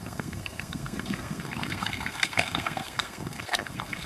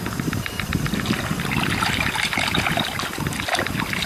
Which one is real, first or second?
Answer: second